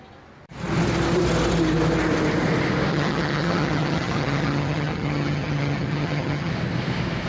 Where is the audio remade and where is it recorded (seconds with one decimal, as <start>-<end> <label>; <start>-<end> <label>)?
0.0-2.9 recorded; 2.9-6.5 remade; 6.5-7.3 recorded